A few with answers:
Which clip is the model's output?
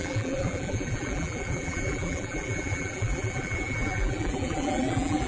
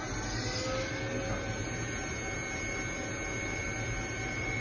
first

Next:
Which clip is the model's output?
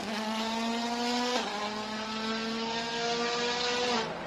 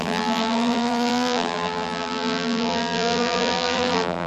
second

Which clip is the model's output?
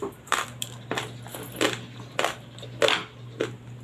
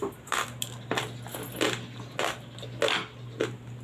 first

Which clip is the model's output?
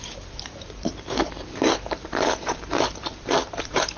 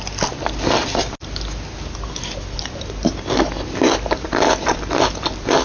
first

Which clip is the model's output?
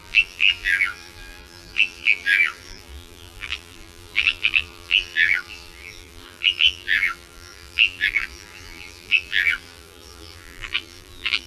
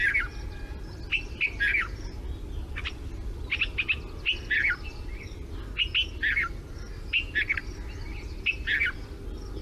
first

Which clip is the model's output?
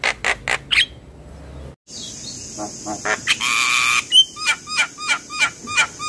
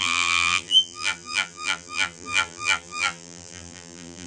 second